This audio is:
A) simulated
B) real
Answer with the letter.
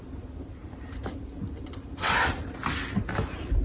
B